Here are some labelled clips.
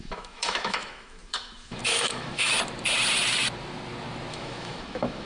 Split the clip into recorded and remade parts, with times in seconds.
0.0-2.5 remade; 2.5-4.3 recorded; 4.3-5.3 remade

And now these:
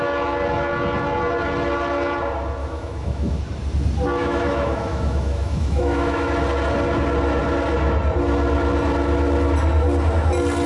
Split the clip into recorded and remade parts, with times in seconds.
0.0-2.6 recorded; 2.6-3.4 remade; 3.4-4.2 recorded; 4.2-6.3 remade; 6.3-10.7 recorded

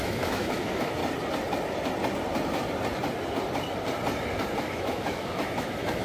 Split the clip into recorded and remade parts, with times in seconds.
0.0-1.0 remade; 1.0-4.6 recorded; 4.6-6.0 remade

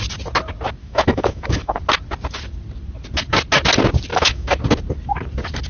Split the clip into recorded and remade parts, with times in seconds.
0.0-0.8 recorded; 0.8-1.8 remade; 1.8-4.1 recorded; 4.1-4.6 remade; 4.6-5.7 recorded

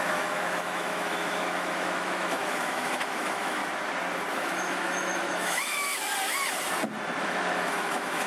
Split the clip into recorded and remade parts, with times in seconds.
0.0-3.6 remade; 3.6-4.3 recorded; 4.3-5.9 remade; 5.9-7.2 recorded; 7.2-8.3 remade

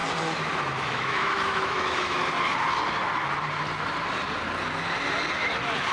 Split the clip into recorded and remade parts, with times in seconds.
0.0-0.8 recorded; 0.8-2.2 remade; 2.2-5.9 recorded

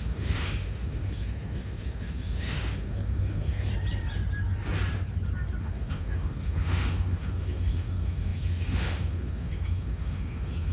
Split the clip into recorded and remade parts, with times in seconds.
0.0-3.7 remade; 3.7-5.6 recorded; 5.6-10.7 remade

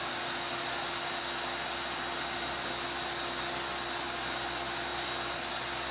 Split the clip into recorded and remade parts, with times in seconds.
0.0-5.9 recorded